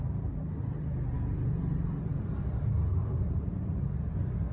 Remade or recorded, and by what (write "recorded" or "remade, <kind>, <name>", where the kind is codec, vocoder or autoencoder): recorded